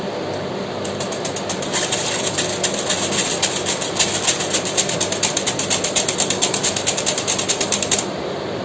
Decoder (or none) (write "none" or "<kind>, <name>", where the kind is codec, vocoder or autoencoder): none